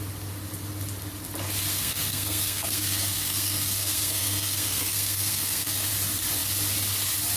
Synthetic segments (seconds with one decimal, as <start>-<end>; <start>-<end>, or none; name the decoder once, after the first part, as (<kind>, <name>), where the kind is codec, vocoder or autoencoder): 1.7-5.9 (codec, SNAC)